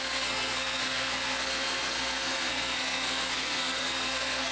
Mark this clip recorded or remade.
remade